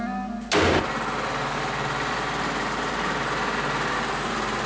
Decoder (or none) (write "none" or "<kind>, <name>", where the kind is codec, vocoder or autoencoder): none